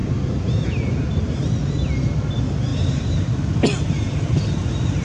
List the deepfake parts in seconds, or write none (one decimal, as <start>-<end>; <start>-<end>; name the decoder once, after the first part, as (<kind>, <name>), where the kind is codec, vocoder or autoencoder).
0.0-2.3 (vocoder, BigVGAN v2); 2.7-3.2